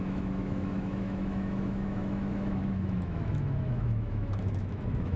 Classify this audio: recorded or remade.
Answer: remade